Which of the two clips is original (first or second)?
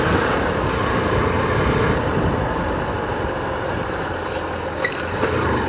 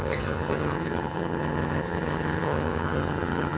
first